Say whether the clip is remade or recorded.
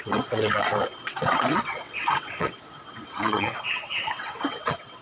remade